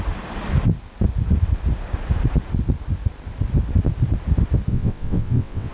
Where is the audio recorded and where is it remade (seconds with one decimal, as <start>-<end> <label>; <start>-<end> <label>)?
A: 0.0-4.7 recorded; 4.7-5.7 remade